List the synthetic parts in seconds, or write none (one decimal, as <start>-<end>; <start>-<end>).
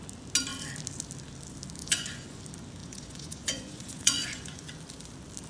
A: 1.8-2.4; 2.8-4.7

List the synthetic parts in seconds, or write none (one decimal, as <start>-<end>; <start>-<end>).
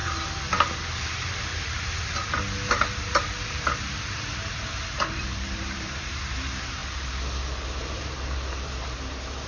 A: 1.0-1.5; 3.5-6.8; 8.0-9.5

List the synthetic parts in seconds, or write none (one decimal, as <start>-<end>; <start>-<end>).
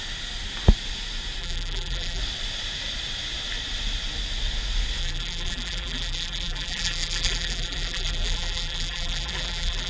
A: 1.4-2.2; 5.0-9.9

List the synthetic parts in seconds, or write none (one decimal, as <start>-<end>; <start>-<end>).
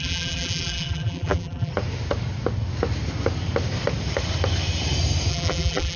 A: 0.0-1.7; 5.3-6.0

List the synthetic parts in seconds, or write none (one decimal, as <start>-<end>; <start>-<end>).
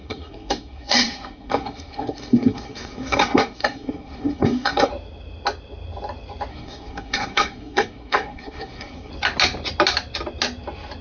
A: 0.0-4.9; 6.5-9.1